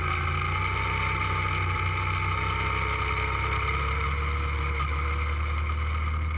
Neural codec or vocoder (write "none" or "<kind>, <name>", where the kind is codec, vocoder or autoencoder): none